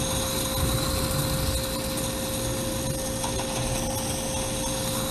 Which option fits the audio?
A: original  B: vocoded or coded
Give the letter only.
A